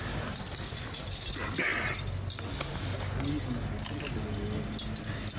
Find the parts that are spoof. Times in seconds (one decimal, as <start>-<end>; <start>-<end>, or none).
none